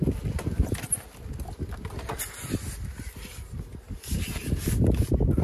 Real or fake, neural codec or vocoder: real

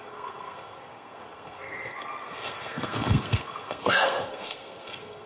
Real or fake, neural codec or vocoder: fake, codec, SNAC